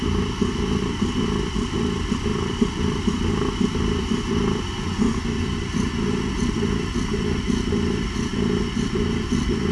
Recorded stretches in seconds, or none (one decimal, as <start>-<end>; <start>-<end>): 0.0-2.3; 2.8-9.7